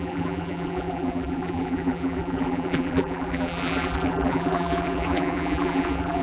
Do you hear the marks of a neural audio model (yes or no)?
yes